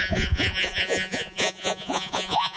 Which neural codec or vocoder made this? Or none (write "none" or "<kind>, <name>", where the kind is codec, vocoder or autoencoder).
vocoder, Vocos